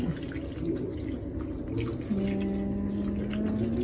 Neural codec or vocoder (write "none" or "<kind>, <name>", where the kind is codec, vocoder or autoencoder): none